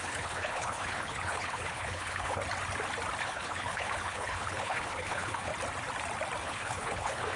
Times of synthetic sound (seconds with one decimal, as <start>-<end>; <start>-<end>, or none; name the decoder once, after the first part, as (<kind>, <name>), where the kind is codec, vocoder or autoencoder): 0.0-2.4 (codec, HILCodec); 3.2-5.5; 6.4-7.4